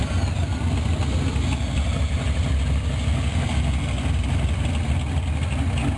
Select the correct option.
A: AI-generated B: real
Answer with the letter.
B